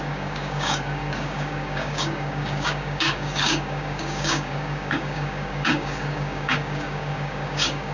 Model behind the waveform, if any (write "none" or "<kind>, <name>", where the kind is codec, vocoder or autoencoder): codec, DAC